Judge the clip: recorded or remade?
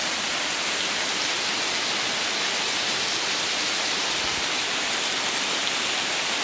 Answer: recorded